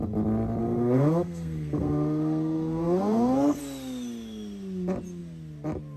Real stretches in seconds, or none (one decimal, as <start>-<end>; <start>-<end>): 0.0-0.6; 3.6-6.0